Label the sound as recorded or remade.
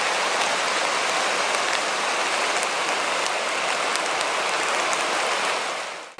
recorded